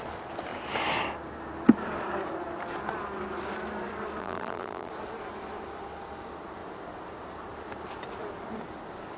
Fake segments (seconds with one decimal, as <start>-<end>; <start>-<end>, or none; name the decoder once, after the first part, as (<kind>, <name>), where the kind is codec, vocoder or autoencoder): 4.2-4.9 (vocoder, BigVGAN v2)